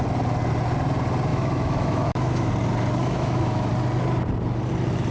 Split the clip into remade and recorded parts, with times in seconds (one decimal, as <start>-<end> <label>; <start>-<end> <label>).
0.0-1.3 recorded; 1.3-2.5 remade; 2.5-3.0 recorded; 3.0-3.7 remade; 3.7-5.1 recorded